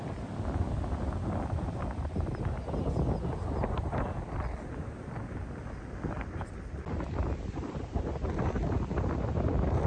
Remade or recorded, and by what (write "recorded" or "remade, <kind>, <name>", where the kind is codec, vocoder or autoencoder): recorded